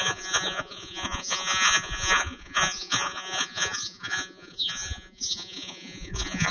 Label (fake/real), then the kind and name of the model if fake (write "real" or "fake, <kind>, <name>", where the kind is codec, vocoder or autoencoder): fake, vocoder, Vocos